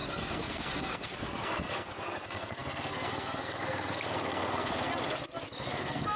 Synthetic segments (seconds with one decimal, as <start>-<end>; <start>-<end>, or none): 0.0-4.9; 5.8-6.2